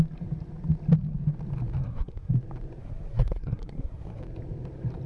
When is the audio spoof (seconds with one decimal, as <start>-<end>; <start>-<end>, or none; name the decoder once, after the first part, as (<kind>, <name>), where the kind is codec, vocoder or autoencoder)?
1.8-2.3 (codec, SNAC); 2.8-4.2